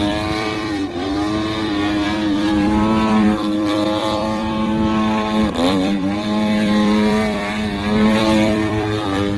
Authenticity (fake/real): fake